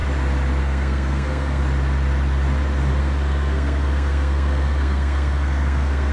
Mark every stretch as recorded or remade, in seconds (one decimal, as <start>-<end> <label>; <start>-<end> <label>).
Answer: 0.0-0.6 recorded; 0.6-1.6 remade; 1.6-3.0 recorded; 3.0-6.1 remade